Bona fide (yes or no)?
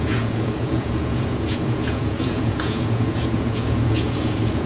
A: no